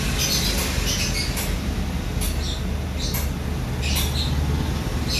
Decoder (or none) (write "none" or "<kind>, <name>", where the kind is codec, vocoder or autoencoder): none